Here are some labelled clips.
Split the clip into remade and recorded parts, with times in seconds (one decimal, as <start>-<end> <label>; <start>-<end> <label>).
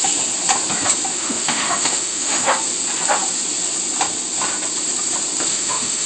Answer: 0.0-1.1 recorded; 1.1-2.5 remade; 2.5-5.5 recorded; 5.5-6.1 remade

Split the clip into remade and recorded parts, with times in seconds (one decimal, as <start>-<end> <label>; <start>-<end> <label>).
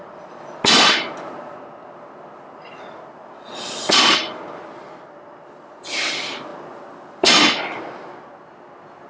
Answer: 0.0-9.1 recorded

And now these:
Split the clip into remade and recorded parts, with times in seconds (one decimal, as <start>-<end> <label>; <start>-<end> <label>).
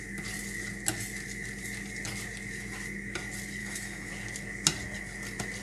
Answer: 0.0-3.6 recorded; 3.6-4.1 remade; 4.1-5.6 recorded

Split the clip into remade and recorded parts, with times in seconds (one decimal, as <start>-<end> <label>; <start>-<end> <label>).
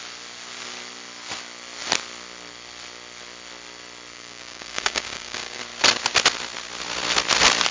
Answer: 0.0-4.1 recorded; 4.1-5.6 remade; 5.6-7.7 recorded